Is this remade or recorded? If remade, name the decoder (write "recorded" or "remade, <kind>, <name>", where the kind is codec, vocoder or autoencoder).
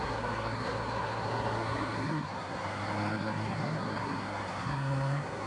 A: remade, codec, SNAC